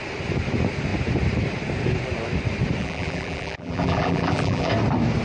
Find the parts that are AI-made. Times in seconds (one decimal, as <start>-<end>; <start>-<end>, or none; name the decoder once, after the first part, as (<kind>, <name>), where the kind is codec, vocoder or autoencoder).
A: 2.8-4.7 (vocoder, BigVGAN v2)